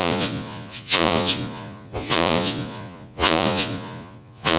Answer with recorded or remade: remade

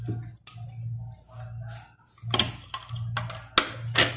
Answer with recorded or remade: recorded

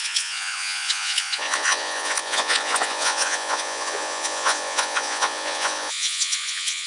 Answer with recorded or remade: remade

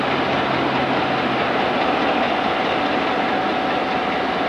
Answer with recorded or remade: recorded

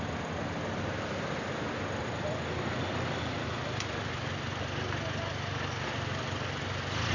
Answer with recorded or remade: recorded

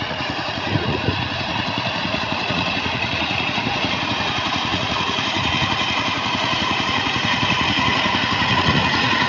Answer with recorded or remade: remade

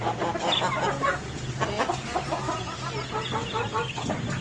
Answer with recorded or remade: recorded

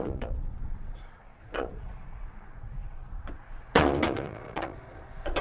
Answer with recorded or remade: remade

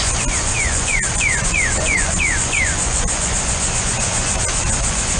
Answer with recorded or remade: remade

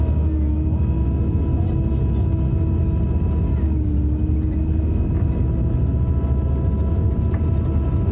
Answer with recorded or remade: recorded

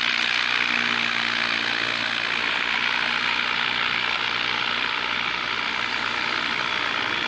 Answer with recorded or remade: recorded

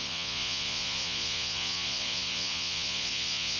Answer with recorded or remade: remade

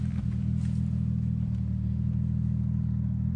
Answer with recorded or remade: recorded